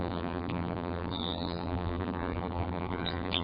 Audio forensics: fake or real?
fake